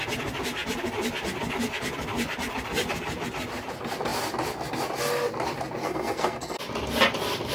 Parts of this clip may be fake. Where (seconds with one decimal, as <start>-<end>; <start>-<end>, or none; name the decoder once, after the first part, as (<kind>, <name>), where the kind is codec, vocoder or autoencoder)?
5.8-6.6 (codec, SNAC)